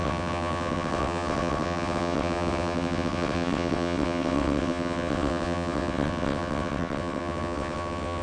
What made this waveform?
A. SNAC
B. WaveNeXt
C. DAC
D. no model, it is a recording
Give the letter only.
B